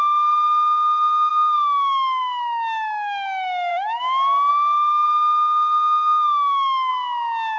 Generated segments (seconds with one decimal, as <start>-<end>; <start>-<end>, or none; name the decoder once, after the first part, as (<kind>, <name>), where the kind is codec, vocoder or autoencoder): 0.0-3.7 (autoencoder, DAC-VAE); 4.5-6.9